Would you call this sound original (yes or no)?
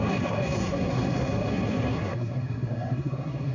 no